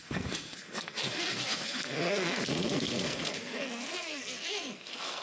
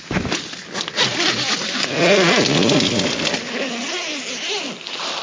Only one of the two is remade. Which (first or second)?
first